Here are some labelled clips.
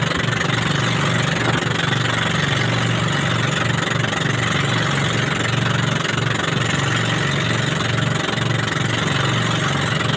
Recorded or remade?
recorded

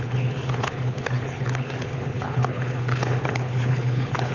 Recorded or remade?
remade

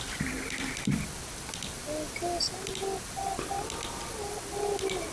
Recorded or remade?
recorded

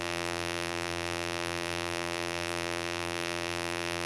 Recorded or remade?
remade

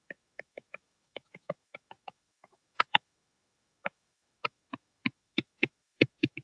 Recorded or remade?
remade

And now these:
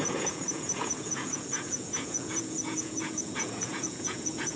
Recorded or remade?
remade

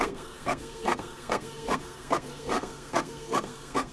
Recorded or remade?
remade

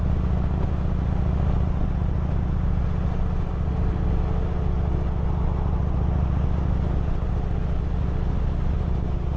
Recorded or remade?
recorded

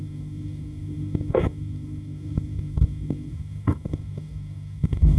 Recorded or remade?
remade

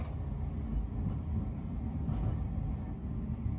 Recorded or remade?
recorded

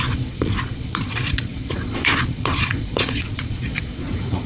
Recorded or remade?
remade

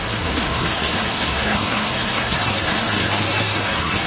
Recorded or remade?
remade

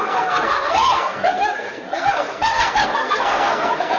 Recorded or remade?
remade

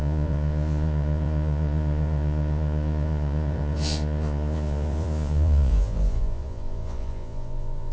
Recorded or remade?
remade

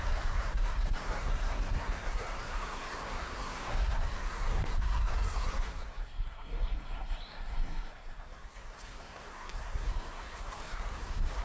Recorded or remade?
remade